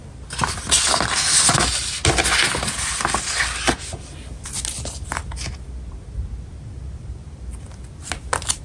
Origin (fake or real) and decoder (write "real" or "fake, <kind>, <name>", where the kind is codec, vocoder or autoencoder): real